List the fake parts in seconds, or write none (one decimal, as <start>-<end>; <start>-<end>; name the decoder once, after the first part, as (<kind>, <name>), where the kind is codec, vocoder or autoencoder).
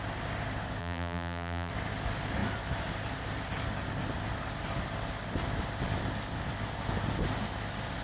0.8-1.7 (vocoder, BigVGAN v2)